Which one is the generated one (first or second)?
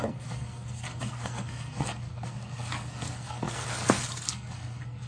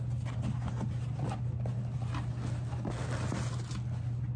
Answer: first